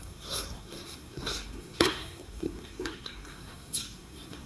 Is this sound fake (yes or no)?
yes